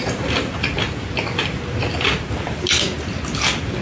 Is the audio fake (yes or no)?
no